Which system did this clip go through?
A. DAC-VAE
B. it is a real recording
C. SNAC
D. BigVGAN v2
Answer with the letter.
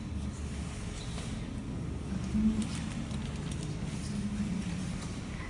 B